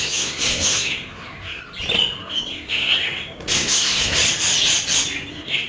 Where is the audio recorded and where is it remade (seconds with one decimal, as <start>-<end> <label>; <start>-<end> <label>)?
0.0-1.6 remade; 1.6-2.2 recorded; 2.2-4.2 remade; 4.2-5.3 recorded; 5.3-5.7 remade